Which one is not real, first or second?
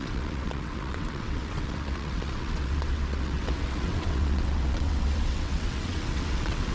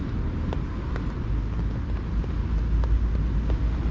first